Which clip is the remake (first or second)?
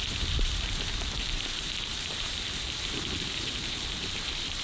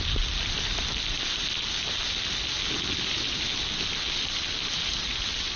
first